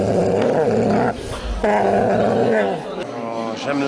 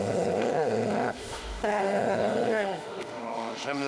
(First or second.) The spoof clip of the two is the second